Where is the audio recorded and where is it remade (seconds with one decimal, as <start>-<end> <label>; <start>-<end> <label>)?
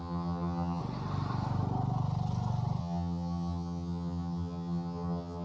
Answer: 0.0-0.8 remade; 0.8-2.8 recorded; 2.8-5.4 remade